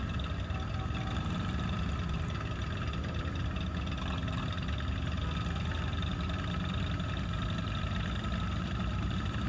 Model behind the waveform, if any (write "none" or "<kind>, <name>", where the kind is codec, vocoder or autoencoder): none